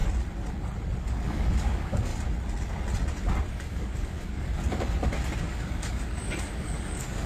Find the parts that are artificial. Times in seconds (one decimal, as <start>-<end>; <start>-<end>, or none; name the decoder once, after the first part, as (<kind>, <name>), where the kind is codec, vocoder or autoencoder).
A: 1.0-2.1 (codec, DAC); 3.5-4.5; 5.4-7.3